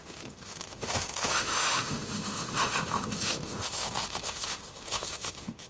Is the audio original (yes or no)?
no